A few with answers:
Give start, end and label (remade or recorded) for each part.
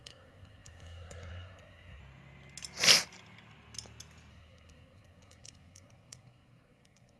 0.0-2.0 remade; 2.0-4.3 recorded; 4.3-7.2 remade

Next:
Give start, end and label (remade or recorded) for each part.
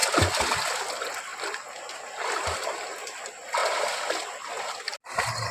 0.0-5.5 recorded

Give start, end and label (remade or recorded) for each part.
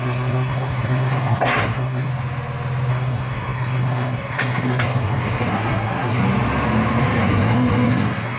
0.0-2.1 remade; 2.1-2.9 recorded; 2.9-6.2 remade; 6.2-7.2 recorded; 7.2-8.4 remade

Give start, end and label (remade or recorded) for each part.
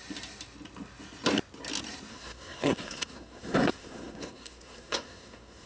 0.0-2.1 recorded; 2.1-5.7 remade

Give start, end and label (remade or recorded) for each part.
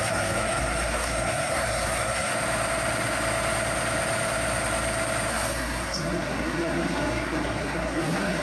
0.0-2.3 remade; 2.3-5.3 recorded; 5.3-8.4 remade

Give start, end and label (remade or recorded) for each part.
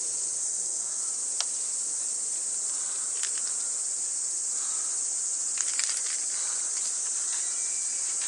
0.0-0.4 recorded; 0.4-1.0 remade; 1.0-8.3 recorded